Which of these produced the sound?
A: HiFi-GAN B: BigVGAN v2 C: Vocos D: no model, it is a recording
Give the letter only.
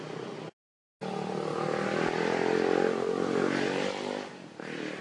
D